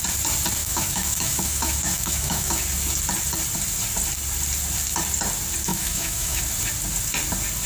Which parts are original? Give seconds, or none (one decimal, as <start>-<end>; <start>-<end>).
0.0-0.6; 2.6-5.7; 6.4-7.7